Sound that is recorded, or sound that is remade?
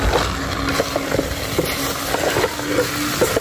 recorded